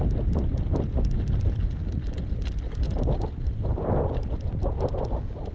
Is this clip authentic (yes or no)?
yes